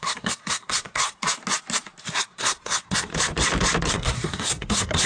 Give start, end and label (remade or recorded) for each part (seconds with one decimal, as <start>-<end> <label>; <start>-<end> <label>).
0.0-1.2 remade; 1.2-2.0 recorded; 2.0-3.1 remade; 3.1-3.9 recorded; 3.9-5.1 remade

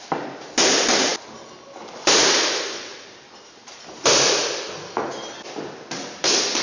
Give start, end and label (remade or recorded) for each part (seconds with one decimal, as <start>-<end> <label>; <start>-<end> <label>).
0.0-6.6 recorded

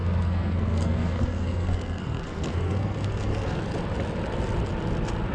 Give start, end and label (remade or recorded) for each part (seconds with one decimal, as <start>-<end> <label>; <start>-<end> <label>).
0.0-3.6 remade; 3.6-5.3 recorded

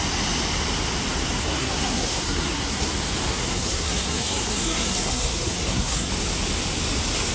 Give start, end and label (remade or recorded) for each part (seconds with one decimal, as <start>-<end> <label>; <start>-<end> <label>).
0.0-1.4 recorded; 1.4-2.9 remade; 2.9-3.3 recorded; 3.3-6.1 remade; 6.1-7.3 recorded

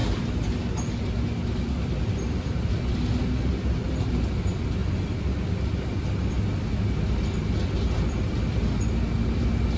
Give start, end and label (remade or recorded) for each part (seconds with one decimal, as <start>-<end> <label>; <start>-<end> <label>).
0.0-9.8 recorded

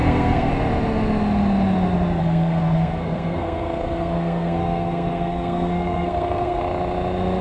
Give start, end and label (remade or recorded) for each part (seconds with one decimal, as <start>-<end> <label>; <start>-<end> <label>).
0.0-0.5 remade; 0.5-2.2 recorded; 2.2-6.6 remade; 6.6-7.4 recorded